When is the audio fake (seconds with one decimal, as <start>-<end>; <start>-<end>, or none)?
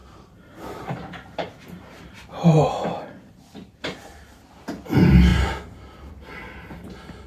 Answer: 0.0-4.4